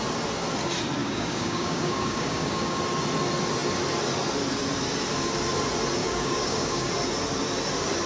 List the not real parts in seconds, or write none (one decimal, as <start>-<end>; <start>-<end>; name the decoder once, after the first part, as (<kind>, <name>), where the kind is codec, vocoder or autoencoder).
1.0-2.8 (codec, DAC); 6.0-6.9